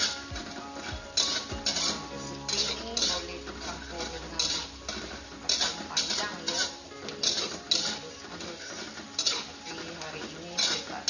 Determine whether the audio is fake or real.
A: real